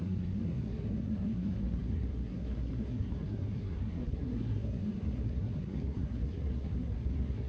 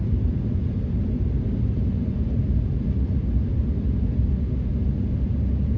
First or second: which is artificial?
first